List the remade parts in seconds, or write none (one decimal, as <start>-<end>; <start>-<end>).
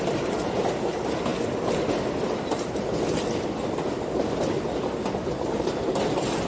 none